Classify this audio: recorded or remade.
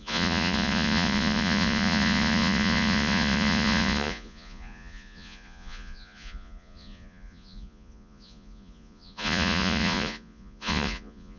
remade